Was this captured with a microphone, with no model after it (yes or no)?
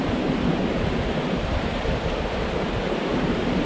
no